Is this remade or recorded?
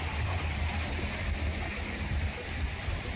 recorded